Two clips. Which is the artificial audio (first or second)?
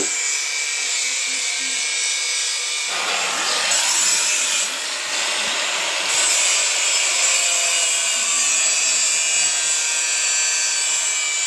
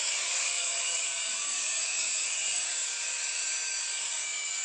second